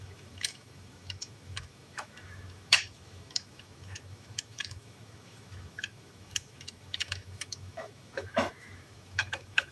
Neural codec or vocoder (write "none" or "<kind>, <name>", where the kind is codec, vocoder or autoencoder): autoencoder, DAC-VAE